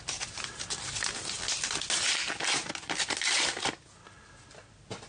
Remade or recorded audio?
recorded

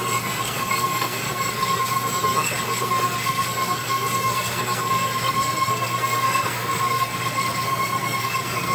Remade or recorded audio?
remade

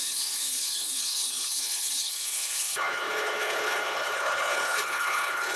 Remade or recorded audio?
remade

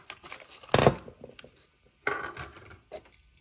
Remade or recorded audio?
recorded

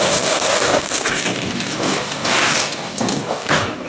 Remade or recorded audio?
remade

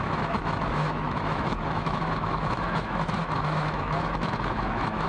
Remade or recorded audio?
remade